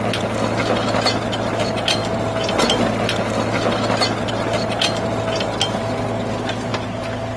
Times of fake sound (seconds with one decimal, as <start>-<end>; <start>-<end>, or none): none